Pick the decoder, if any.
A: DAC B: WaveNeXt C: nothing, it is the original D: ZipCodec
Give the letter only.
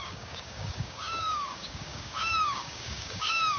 A